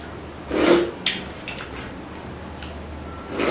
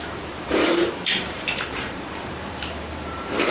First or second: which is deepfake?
second